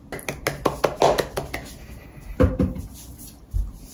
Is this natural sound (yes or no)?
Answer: yes